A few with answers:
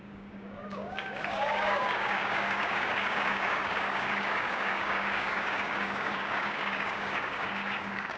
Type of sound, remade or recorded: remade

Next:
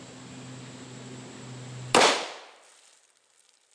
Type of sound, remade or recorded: recorded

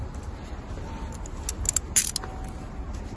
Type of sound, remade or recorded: recorded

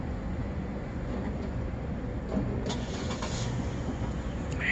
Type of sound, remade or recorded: remade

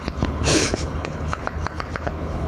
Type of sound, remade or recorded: remade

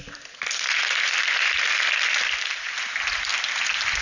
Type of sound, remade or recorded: recorded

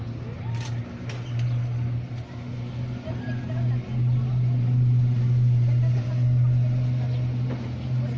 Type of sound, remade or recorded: recorded